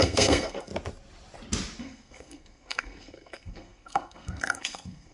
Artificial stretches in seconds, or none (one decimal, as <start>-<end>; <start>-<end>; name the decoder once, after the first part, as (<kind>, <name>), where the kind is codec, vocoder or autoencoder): 0.0-0.7 (codec, SNAC); 1.8-5.1